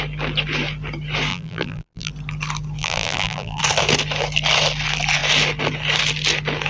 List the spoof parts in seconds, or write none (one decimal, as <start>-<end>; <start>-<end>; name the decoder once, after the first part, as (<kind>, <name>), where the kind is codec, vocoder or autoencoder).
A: 1.3-2.1 (vocoder, BigVGAN v2); 2.8-3.6